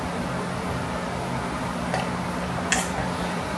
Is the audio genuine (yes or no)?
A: yes